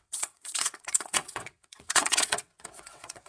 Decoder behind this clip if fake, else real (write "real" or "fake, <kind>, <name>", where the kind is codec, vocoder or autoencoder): fake, vocoder, WaveNeXt